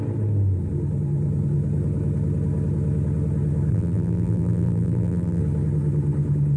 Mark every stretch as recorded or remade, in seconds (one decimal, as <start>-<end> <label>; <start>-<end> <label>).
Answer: 0.0-3.7 recorded; 3.7-5.4 remade; 5.4-6.6 recorded